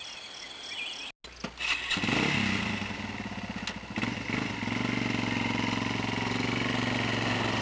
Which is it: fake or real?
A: real